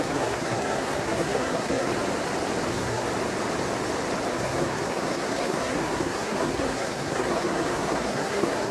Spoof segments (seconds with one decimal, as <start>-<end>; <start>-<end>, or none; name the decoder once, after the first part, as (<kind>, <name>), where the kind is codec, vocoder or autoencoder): 0.0-1.9 (codec, SNAC); 2.7-3.1; 4.3-8.7